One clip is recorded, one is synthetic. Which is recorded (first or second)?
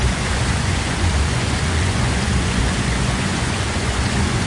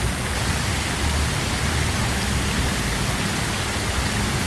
second